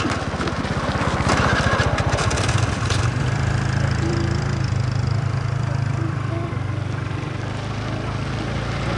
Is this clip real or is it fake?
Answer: fake